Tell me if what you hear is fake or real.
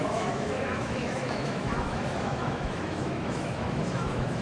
fake